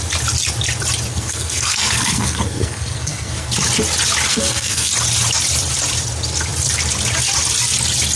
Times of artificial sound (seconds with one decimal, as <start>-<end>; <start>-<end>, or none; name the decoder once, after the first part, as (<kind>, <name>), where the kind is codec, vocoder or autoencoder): 1.1-3.5 (codec, SNAC); 4.3-4.9